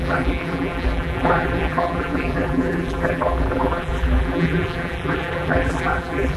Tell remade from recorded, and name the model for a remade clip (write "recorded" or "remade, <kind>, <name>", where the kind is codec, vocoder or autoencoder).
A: remade, vocoder, BigVGAN v2